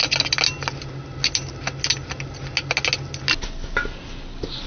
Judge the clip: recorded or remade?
recorded